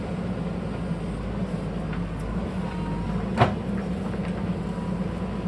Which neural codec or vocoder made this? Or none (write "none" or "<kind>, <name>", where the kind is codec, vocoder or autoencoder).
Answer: none